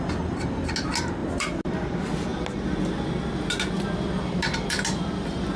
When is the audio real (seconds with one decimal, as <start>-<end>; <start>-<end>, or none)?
0.0-5.6